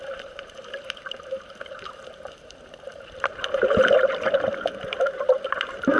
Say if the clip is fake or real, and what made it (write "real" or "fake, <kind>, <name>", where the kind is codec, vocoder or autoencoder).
fake, vocoder, BigVGAN v2